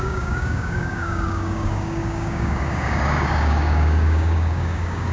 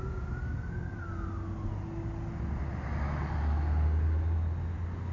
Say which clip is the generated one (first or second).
first